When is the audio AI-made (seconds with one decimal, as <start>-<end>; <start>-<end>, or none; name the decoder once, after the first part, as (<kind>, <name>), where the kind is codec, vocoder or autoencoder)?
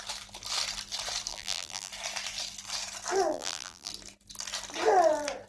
1.3-1.9 (vocoder, BigVGAN v2); 3.3-3.9